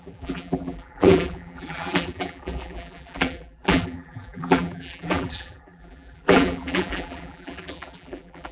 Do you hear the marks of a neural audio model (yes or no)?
yes